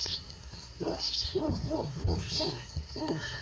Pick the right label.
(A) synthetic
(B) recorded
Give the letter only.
A